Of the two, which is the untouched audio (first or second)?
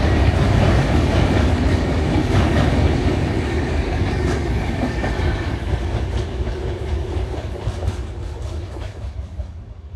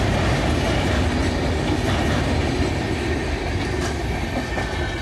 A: second